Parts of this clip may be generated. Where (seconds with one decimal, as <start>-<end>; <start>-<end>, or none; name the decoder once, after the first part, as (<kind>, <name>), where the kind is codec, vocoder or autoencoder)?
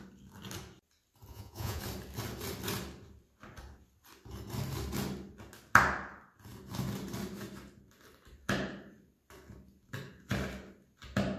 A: 1.3-1.8 (vocoder, Vocos)